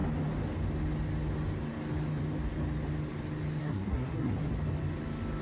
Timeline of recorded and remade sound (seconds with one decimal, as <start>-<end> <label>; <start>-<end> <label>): 0.0-3.6 recorded; 3.6-4.5 remade; 4.5-5.4 recorded